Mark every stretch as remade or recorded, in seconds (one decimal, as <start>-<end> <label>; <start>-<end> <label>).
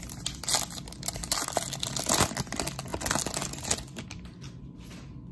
0.0-5.3 recorded